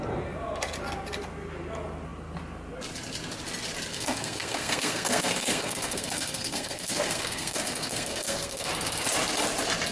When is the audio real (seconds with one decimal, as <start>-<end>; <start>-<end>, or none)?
0.0-3.9; 8.7-9.9